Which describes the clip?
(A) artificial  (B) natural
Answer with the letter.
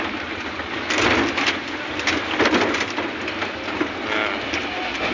B